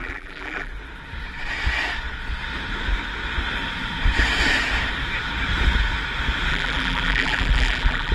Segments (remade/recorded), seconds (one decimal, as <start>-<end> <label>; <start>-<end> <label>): 0.0-0.7 remade; 0.7-6.5 recorded; 6.5-8.1 remade